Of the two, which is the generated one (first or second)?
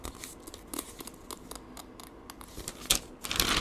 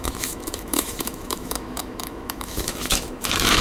second